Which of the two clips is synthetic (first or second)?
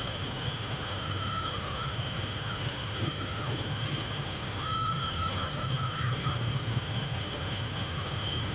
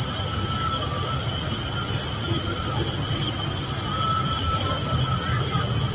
first